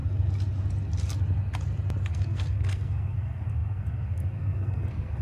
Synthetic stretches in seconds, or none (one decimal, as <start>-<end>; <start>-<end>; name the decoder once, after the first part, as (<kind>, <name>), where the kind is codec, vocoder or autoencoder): 2.1-5.2 (codec, SNAC)